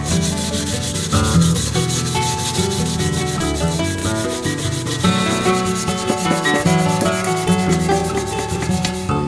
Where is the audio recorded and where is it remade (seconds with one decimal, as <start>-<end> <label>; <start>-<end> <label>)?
0.0-4.0 recorded; 4.0-5.9 remade; 5.9-8.0 recorded; 8.0-9.3 remade